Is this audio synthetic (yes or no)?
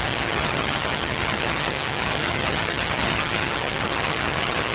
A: yes